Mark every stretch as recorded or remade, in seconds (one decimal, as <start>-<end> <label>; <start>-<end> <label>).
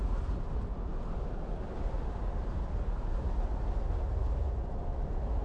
0.0-5.4 recorded